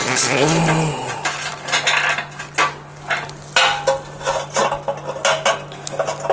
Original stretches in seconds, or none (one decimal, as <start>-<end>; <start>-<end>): 0.0-6.3